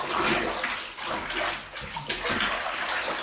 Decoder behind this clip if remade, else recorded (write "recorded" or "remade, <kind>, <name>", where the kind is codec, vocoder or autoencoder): recorded